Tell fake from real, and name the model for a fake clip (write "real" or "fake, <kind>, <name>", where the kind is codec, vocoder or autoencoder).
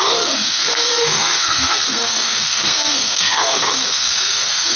fake, codec, SNAC